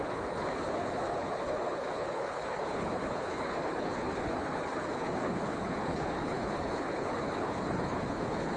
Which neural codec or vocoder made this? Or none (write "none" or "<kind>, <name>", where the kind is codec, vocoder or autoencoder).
codec, HILCodec